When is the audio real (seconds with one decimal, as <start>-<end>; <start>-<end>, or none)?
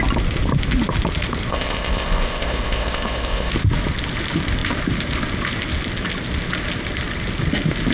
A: 0.0-1.5; 3.5-7.9